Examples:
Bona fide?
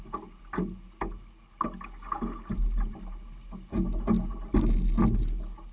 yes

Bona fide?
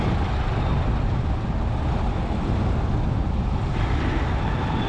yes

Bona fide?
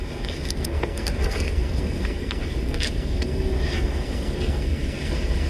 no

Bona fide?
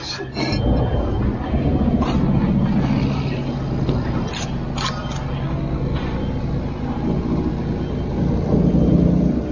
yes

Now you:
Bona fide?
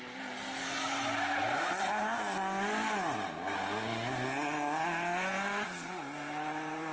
yes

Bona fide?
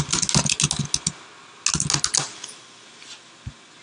yes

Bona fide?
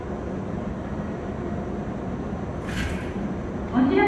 yes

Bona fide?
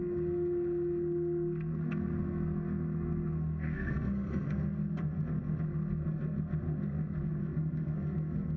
no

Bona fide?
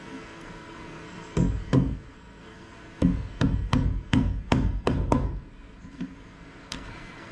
no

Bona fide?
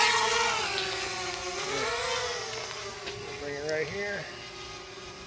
yes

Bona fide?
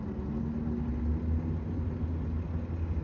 yes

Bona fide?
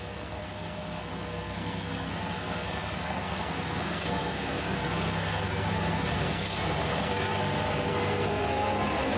no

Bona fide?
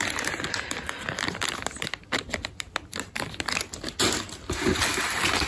yes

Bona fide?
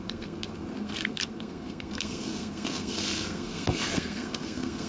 no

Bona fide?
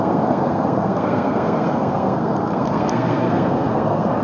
no